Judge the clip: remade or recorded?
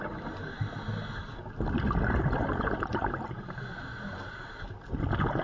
recorded